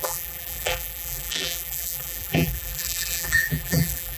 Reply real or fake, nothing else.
fake